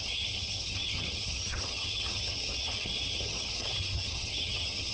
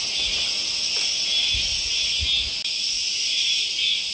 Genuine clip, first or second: second